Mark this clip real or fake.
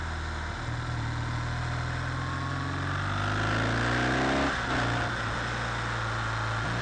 real